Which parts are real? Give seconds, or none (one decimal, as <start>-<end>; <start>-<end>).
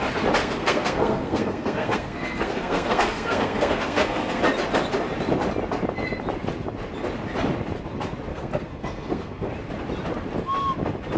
0.0-0.4; 4.4-8.3; 9.5-11.2